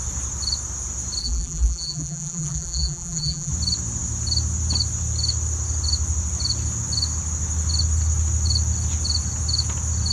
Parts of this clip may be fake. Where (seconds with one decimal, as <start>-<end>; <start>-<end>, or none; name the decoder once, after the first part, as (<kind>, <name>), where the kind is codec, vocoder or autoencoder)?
1.2-3.5 (vocoder, BigVGAN v2)